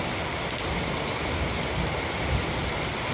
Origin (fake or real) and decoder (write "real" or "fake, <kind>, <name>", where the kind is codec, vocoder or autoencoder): real